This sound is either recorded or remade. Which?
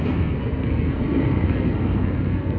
remade